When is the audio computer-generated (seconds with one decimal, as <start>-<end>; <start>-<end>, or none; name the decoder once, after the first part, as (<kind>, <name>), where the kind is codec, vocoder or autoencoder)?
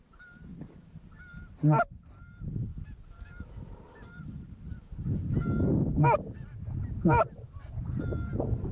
none